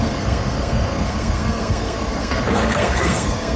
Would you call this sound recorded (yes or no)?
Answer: no